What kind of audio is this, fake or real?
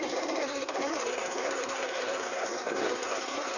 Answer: fake